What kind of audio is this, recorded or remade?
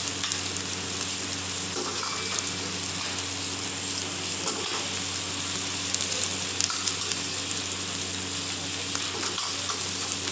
recorded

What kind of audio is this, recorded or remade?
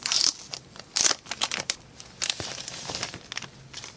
recorded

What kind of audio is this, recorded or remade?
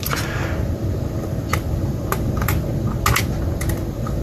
recorded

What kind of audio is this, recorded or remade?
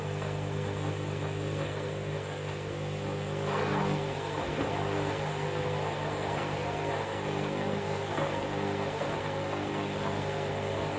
remade